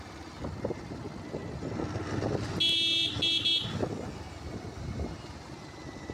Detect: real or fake real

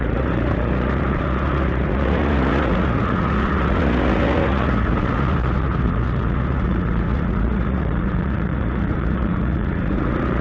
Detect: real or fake fake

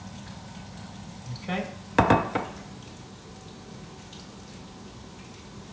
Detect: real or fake real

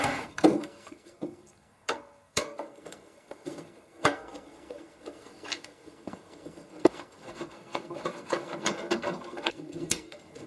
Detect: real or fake fake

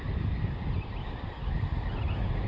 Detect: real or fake real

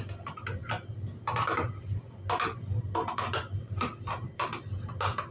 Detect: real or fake real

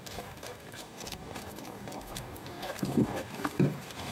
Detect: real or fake fake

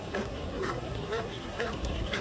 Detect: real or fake fake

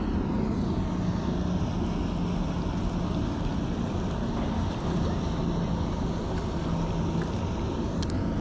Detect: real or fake real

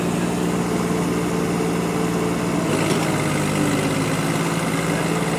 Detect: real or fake real